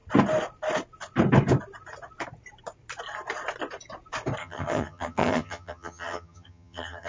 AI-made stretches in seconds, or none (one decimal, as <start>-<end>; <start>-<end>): 4.4-7.1